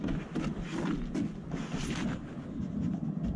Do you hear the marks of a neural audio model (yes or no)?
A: no